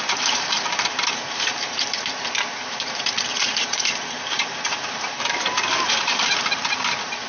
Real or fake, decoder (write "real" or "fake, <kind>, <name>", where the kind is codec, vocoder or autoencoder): fake, vocoder, BigVGAN v2